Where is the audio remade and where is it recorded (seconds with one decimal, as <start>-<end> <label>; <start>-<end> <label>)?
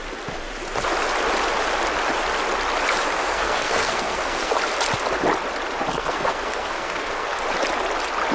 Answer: 0.0-3.2 recorded; 3.2-4.5 remade; 4.5-5.9 recorded; 5.9-7.4 remade; 7.4-8.3 recorded